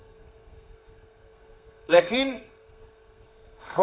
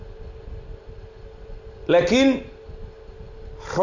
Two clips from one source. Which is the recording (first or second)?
second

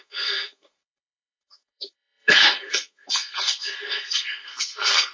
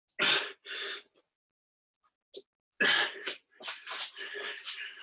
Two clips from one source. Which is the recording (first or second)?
second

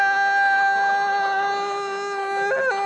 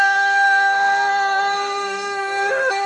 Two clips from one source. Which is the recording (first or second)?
first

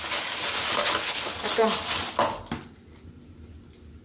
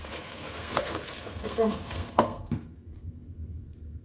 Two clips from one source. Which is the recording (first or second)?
first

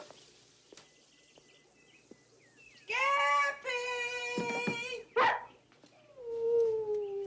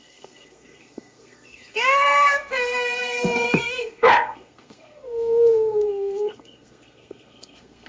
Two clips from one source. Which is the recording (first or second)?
first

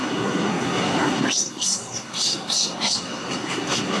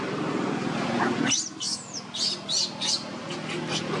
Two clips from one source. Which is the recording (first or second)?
second